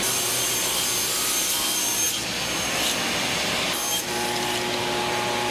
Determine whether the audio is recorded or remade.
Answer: recorded